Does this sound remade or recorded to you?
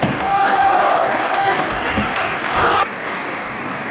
remade